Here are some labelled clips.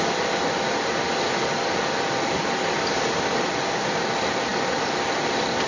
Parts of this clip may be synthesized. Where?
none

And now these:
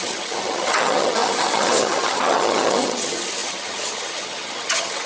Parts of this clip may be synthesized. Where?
0.0-5.1 (vocoder, HiFi-GAN)